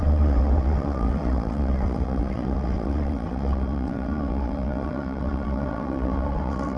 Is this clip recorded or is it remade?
remade